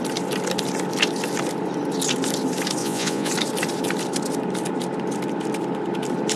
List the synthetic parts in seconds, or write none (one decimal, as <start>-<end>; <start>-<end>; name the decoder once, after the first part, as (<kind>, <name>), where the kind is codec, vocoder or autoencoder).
2.8-3.3 (vocoder, Vocos)